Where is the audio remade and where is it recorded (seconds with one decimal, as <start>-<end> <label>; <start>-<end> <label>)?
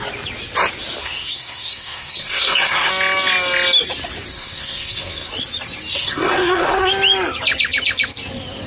0.0-1.0 recorded; 1.0-2.9 remade; 2.9-4.3 recorded; 4.3-5.3 remade; 5.3-5.9 recorded; 5.9-6.9 remade; 6.9-8.7 recorded